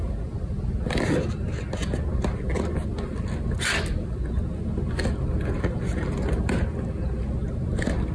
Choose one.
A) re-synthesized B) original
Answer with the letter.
B